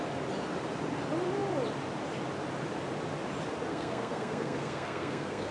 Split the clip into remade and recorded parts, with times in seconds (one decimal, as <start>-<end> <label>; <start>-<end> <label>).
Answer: 0.0-3.7 recorded; 3.7-5.5 remade